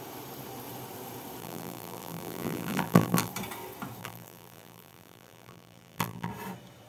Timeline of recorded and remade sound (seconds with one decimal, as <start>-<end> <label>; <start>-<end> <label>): 0.0-1.4 recorded; 1.4-3.3 remade; 3.3-4.0 recorded; 4.0-6.3 remade; 6.3-6.9 recorded